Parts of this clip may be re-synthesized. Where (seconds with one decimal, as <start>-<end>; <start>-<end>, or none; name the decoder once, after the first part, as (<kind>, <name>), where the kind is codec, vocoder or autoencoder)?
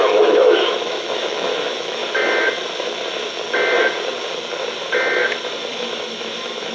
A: 0.0-2.0 (autoencoder, DAC-VAE); 5.7-6.7